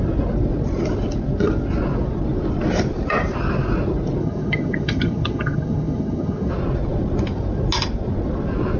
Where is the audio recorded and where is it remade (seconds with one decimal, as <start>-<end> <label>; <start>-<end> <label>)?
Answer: 0.0-4.2 recorded; 4.2-6.5 remade; 6.5-8.8 recorded